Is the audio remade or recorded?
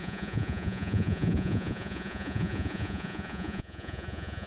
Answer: remade